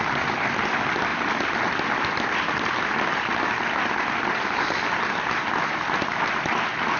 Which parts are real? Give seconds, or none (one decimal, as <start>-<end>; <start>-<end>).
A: 0.0-7.0